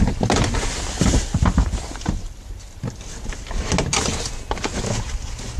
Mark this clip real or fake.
real